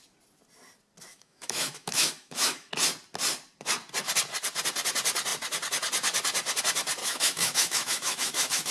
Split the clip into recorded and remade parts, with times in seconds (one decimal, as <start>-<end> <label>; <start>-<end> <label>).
0.0-1.1 recorded; 1.1-2.7 remade; 2.7-7.0 recorded; 7.0-8.7 remade